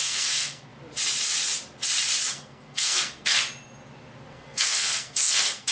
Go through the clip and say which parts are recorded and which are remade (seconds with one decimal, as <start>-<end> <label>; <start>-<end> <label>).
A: 0.0-0.7 remade; 0.7-2.3 recorded; 2.3-3.4 remade; 3.4-4.3 recorded; 4.3-5.7 remade